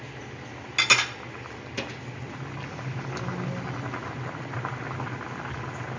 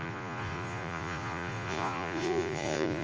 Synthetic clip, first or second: second